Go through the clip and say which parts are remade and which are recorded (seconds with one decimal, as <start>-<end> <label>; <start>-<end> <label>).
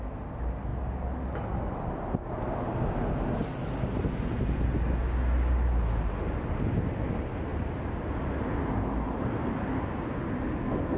0.0-11.0 recorded